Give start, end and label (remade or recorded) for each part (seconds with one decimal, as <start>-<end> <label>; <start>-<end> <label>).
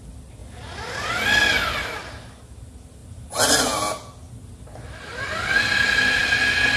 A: 0.0-6.8 recorded